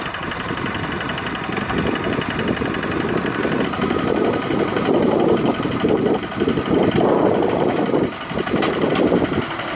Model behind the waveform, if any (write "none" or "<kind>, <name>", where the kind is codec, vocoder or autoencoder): none